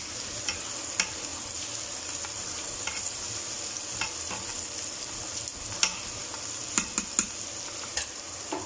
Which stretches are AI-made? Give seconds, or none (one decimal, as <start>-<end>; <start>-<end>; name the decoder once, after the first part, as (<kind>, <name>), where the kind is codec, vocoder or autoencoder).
none